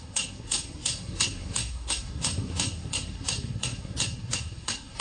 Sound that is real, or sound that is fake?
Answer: fake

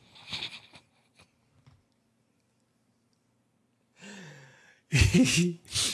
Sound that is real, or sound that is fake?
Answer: real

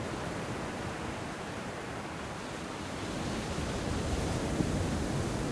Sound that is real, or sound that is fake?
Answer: real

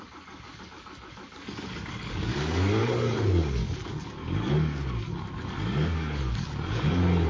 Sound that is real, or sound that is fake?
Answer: fake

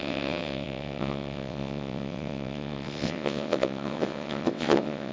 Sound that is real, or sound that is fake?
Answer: fake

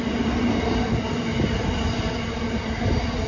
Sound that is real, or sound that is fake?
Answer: real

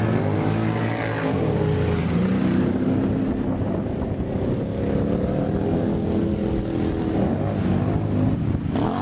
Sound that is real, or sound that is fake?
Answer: real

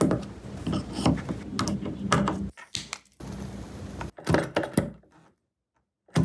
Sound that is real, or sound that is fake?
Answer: real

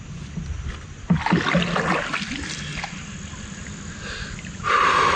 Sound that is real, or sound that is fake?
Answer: real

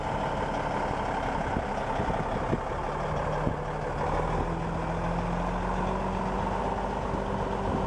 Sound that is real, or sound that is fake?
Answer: real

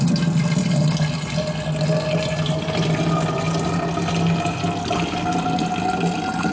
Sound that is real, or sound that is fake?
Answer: real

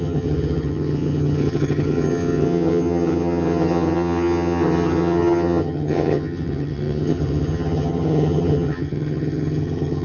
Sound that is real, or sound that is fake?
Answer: fake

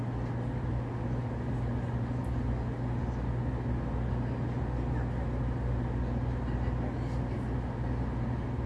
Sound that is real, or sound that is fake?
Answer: real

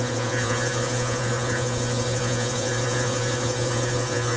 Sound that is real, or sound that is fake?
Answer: fake